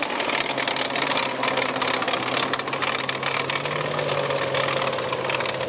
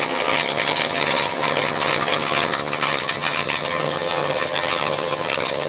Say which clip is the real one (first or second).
first